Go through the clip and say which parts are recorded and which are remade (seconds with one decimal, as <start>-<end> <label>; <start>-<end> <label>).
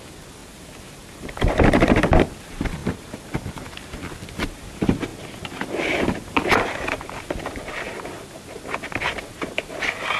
0.0-0.4 recorded; 0.4-2.2 remade; 2.2-10.2 recorded